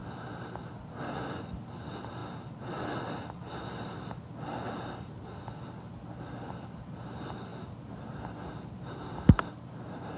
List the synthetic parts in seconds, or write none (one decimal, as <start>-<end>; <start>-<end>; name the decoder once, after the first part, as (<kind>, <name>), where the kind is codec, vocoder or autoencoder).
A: none